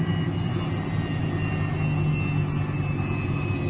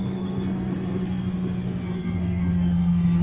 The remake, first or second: second